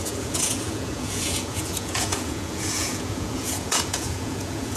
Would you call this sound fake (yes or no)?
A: yes